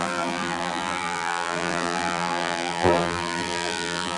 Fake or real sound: fake